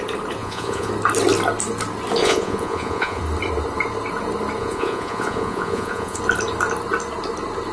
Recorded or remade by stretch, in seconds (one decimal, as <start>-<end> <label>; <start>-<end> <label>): 0.0-0.4 recorded; 0.4-0.9 remade; 0.9-2.2 recorded; 2.2-3.2 remade; 3.2-4.6 recorded; 4.6-6.2 remade; 6.2-7.7 recorded